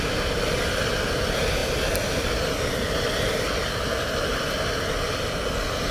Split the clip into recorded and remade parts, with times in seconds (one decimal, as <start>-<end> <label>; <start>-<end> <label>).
0.0-5.9 recorded